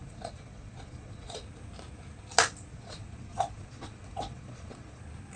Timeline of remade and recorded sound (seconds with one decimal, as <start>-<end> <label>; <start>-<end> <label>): 0.0-1.4 remade; 1.4-2.7 recorded; 2.7-5.0 remade; 5.0-5.4 recorded